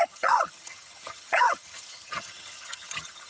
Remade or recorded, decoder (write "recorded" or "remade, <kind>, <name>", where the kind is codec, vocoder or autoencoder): remade, vocoder, HiFi-GAN